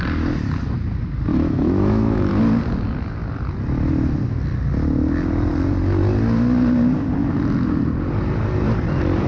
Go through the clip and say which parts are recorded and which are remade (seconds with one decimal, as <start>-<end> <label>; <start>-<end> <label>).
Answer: 0.0-1.3 recorded; 1.3-2.4 remade; 2.4-9.3 recorded